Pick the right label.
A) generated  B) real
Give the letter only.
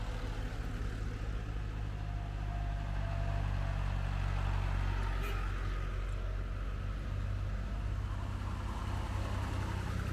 B